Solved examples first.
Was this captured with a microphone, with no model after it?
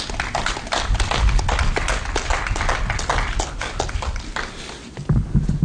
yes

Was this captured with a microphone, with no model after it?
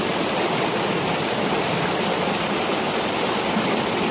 yes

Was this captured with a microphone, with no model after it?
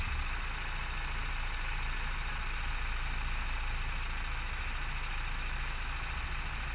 yes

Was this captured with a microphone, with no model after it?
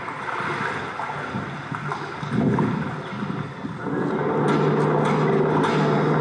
yes